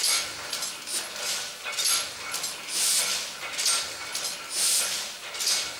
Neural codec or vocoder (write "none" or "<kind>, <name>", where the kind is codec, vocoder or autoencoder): none